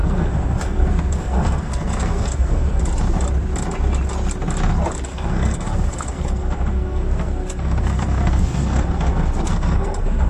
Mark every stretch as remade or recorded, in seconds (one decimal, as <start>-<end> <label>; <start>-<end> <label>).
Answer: 0.0-2.8 remade; 2.8-5.1 recorded; 5.1-10.3 remade

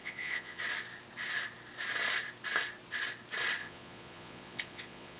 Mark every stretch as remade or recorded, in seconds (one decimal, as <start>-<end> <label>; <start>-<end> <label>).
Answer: 0.0-0.6 remade; 0.6-3.6 recorded; 3.6-5.2 remade

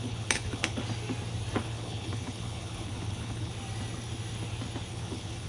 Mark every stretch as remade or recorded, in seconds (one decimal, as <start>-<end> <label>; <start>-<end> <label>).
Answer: 0.0-0.8 remade; 0.8-1.6 recorded; 1.6-3.5 remade; 3.5-4.9 recorded; 4.9-5.5 remade